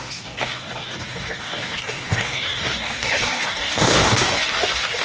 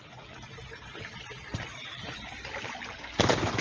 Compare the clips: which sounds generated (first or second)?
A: first